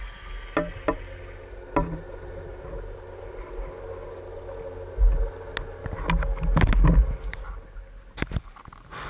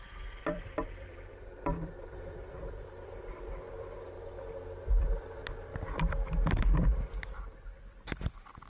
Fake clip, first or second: second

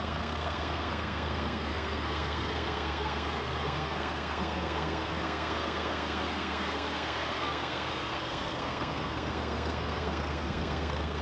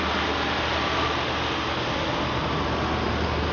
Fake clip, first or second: first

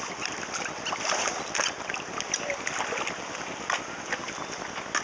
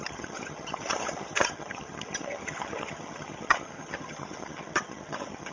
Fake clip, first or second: second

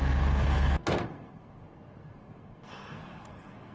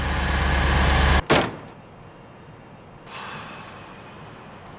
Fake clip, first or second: first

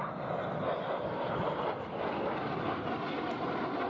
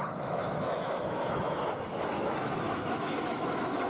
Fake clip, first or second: second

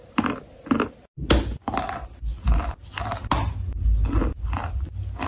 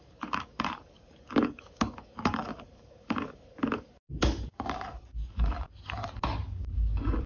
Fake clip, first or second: second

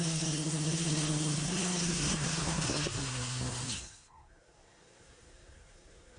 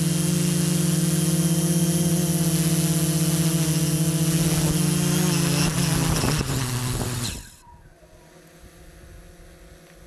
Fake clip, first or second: first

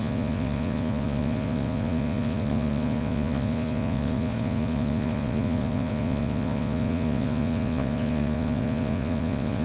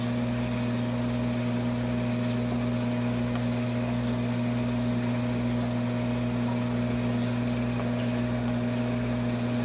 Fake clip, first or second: first